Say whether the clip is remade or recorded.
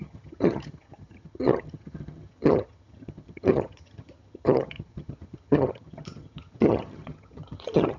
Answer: remade